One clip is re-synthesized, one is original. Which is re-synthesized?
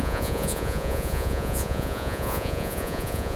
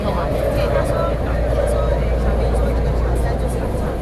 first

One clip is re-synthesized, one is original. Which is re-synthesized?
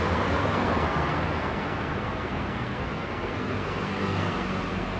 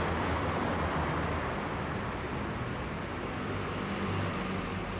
first